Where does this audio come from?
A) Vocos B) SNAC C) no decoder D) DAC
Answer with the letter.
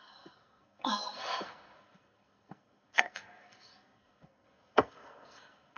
B